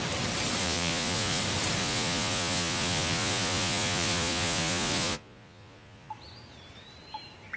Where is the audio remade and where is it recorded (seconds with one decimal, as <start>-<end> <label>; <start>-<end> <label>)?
0.0-0.6 recorded; 0.6-1.4 remade; 1.4-1.8 recorded; 1.8-6.1 remade; 6.1-7.6 recorded